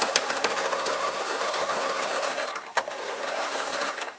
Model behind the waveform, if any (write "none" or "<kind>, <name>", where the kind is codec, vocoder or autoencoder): codec, SNAC